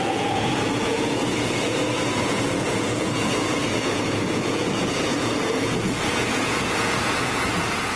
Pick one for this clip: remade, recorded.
remade